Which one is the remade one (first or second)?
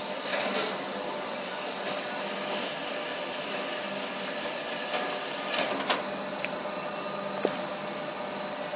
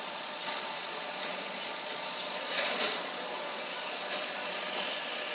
second